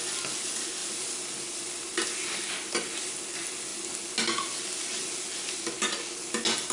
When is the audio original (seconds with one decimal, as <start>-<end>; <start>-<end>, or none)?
0.0-0.8; 3.2-6.7